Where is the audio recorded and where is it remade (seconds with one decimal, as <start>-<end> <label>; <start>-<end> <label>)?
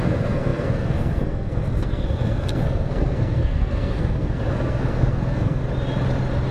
0.0-5.6 remade; 5.6-6.5 recorded